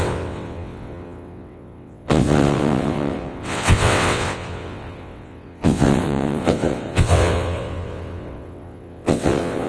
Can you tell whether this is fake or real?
fake